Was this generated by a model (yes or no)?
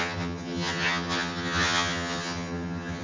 yes